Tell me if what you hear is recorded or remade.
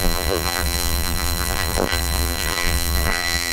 remade